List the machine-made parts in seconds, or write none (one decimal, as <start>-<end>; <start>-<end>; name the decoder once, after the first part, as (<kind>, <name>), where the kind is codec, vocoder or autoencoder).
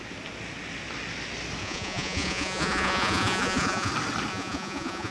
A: 1.6-3.9 (vocoder, Vocos); 4.3-5.1